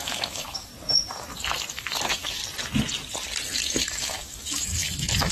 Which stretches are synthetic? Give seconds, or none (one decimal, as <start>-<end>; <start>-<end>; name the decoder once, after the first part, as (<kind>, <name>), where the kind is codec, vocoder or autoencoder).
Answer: 0.0-0.7 (autoencoder, DAC-VAE); 1.7-2.4; 3.6-5.3